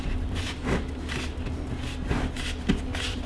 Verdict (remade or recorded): recorded